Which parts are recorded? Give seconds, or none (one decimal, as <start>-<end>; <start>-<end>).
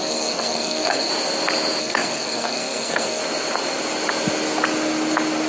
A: 1.1-1.8; 3.2-5.5